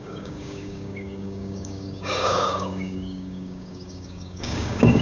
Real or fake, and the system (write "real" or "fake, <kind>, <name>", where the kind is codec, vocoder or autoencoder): fake, codec, DAC